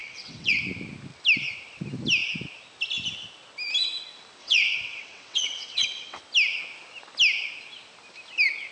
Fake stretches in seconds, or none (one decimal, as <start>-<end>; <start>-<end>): 0.0-0.6; 4.4-6.2